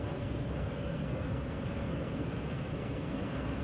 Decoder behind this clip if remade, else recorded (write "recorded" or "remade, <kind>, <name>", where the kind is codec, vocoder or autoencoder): remade, codec, SNAC